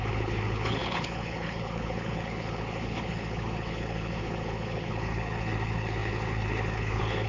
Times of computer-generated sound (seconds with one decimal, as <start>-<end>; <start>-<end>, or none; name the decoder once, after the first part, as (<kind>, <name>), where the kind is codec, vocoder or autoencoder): 0.0-7.3 (codec, HILCodec)